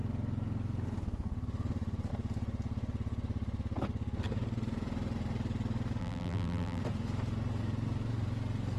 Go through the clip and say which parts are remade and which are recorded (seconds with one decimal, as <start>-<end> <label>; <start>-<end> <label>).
0.0-6.0 recorded; 6.0-6.8 remade; 6.8-8.8 recorded

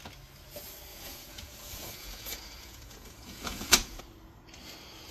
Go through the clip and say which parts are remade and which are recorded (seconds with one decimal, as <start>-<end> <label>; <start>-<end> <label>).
0.0-0.9 recorded; 0.9-4.0 remade; 4.0-5.1 recorded

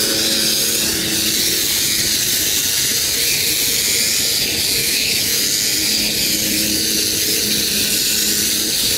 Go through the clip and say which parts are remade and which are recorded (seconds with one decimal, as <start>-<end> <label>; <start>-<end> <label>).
0.0-4.8 recorded; 4.8-5.4 remade; 5.4-9.0 recorded

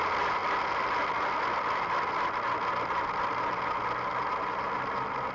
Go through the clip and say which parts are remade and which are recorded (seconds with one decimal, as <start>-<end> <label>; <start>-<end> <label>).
0.0-5.3 recorded

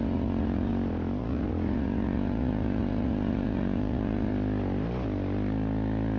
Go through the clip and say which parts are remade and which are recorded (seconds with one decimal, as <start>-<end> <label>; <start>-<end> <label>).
0.0-0.7 remade; 0.7-1.2 recorded; 1.2-4.3 remade; 4.3-6.2 recorded

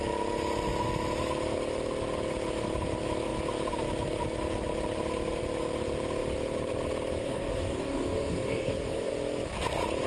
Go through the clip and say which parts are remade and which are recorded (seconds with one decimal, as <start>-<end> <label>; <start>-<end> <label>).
0.0-7.2 recorded; 7.2-9.1 remade; 9.1-10.1 recorded

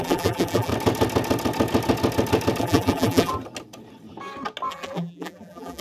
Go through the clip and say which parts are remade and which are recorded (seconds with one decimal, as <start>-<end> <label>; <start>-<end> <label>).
0.0-0.7 remade; 0.7-2.6 recorded; 2.6-3.3 remade; 3.3-4.7 recorded; 4.7-5.8 remade

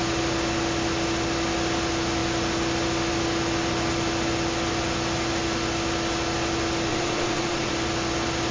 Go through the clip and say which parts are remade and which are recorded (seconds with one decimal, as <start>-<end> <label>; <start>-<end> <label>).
0.0-6.9 recorded; 6.9-7.7 remade; 7.7-8.5 recorded